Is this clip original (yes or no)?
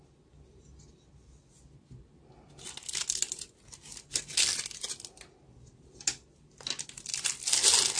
yes